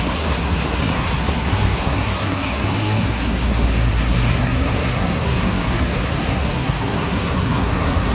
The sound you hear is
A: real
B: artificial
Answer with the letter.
B